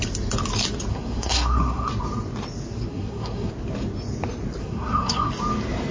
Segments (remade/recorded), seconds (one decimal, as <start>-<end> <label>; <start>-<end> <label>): 0.0-0.9 recorded; 0.9-1.9 remade; 1.9-2.9 recorded; 2.9-3.5 remade; 3.5-4.6 recorded; 4.6-5.3 remade; 5.3-5.9 recorded

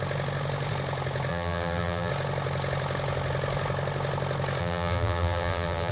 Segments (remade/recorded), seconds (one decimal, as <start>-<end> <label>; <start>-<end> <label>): 0.0-1.3 recorded; 1.3-2.1 remade; 2.1-4.6 recorded; 4.6-5.9 remade

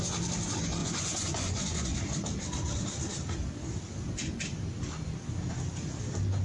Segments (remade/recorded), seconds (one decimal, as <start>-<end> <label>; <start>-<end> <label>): 0.0-0.8 recorded; 0.8-2.0 remade; 2.0-6.4 recorded

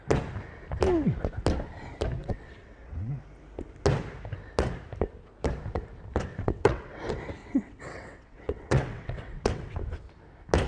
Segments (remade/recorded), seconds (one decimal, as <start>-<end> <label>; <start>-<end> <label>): 0.0-2.2 recorded; 2.2-3.1 remade; 3.1-6.3 recorded; 6.3-7.0 remade; 7.0-7.4 recorded; 7.4-9.8 remade; 9.8-10.7 recorded

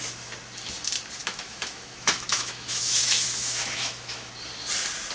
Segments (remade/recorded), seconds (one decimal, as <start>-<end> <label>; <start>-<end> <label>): 0.0-1.2 recorded; 1.2-4.3 remade; 4.3-5.1 recorded

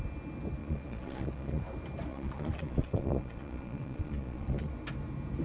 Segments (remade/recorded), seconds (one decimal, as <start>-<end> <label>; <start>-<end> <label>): 0.0-0.6 recorded; 0.6-1.6 remade; 1.6-2.1 recorded; 2.1-4.7 remade; 4.7-5.4 recorded

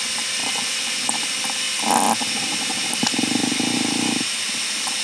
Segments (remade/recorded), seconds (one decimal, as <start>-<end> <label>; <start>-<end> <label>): 0.0-0.4 recorded; 0.4-1.0 remade; 1.0-5.0 recorded

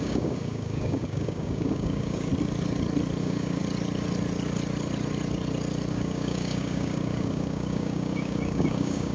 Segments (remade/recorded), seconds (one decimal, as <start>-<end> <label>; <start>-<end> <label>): 0.0-2.3 remade; 2.3-3.2 recorded; 3.2-3.6 remade; 3.6-5.9 recorded; 5.9-9.1 remade